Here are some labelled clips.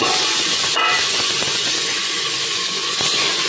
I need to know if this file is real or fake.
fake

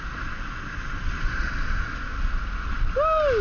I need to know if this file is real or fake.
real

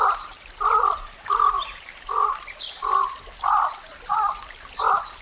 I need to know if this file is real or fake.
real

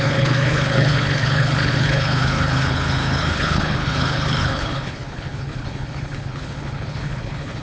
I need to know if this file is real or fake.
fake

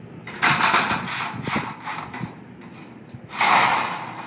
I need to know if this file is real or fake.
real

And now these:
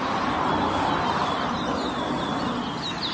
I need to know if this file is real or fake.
real